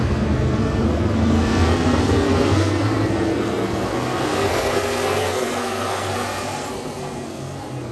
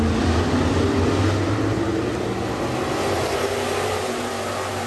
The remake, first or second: first